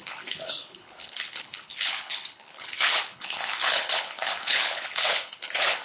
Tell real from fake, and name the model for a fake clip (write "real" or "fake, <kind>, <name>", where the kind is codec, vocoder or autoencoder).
fake, codec, HILCodec